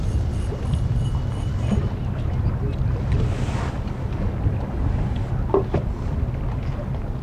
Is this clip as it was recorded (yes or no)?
yes